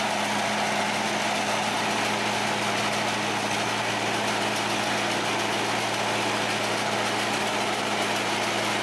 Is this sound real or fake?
real